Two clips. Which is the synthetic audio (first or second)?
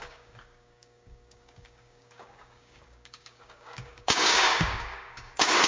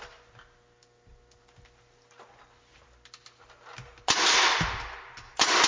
first